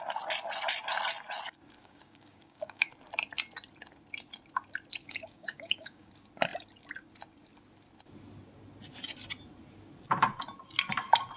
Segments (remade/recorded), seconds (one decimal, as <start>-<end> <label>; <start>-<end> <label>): 0.0-1.8 recorded; 1.8-2.9 remade; 2.9-5.0 recorded; 5.0-6.1 remade; 6.1-11.4 recorded